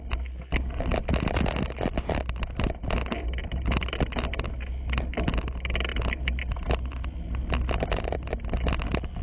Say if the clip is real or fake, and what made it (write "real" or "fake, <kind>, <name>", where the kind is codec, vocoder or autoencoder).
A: real